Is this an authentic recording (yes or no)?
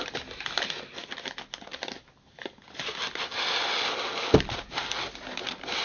yes